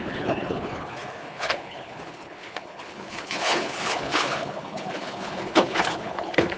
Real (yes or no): no